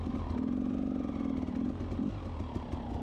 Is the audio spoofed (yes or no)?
no